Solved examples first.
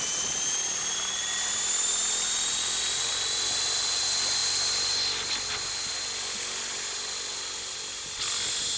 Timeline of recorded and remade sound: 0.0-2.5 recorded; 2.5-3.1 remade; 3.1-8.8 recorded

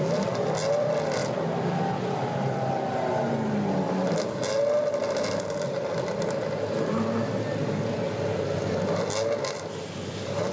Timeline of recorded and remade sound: 0.0-10.5 recorded

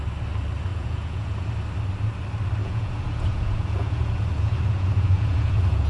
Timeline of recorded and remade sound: 0.0-0.7 recorded; 0.7-1.5 remade; 1.5-2.6 recorded; 2.6-5.9 remade

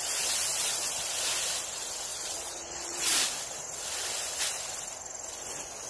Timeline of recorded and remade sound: 0.0-2.1 recorded; 2.1-3.3 remade; 3.3-5.9 recorded

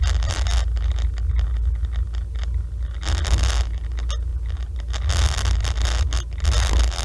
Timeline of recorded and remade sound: 0.0-7.0 recorded

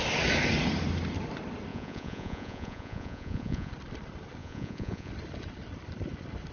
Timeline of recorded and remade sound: 0.0-1.7 recorded; 1.7-3.7 remade; 3.7-4.4 recorded; 4.4-5.1 remade; 5.1-6.5 recorded

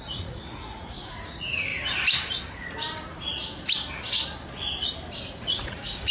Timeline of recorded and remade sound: 0.0-1.7 remade; 1.7-5.4 recorded; 5.4-6.1 remade